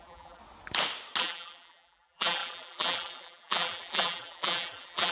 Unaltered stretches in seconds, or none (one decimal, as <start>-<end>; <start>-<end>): 0.4-1.2